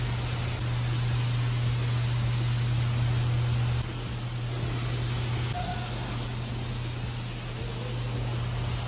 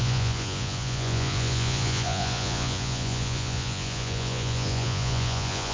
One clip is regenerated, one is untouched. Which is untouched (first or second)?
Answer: first